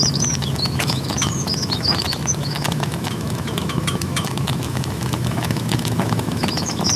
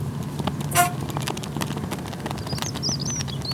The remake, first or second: first